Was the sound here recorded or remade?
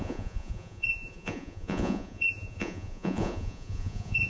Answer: remade